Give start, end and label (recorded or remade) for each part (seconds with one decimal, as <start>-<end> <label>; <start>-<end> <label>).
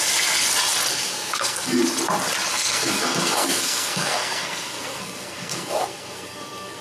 0.0-0.9 recorded; 0.9-1.8 remade; 1.8-2.5 recorded; 2.5-6.8 remade